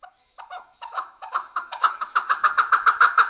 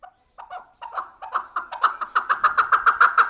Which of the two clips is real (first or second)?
second